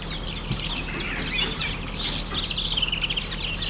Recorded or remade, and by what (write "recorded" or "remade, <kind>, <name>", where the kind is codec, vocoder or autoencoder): recorded